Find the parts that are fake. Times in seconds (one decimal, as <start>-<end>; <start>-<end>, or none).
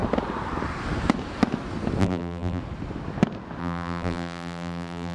2.0-2.6; 3.6-5.1